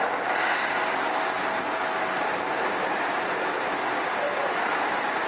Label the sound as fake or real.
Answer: real